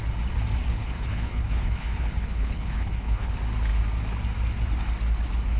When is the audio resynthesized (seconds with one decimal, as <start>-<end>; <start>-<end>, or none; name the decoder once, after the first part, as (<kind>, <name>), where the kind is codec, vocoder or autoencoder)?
0.7-3.3 (codec, HILCodec)